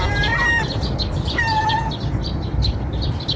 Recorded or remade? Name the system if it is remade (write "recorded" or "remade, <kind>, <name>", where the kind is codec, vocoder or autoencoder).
recorded